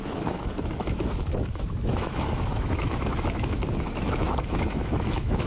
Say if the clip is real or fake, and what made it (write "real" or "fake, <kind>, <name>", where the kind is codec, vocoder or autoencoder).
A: fake, autoencoder, DAC-VAE